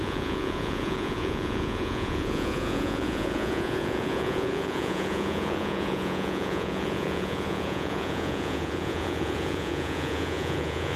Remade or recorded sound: remade